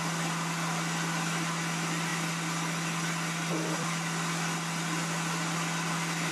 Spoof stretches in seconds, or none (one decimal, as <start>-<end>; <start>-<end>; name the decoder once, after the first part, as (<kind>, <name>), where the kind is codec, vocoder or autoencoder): none

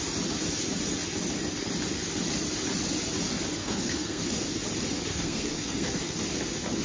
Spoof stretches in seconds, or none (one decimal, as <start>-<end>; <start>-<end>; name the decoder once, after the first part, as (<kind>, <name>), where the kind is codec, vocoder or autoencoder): 3.6-4.2 (codec, SNAC); 5.1-6.2